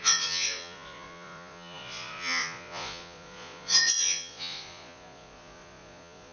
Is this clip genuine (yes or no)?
no